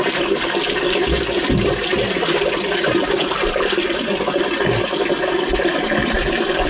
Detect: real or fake real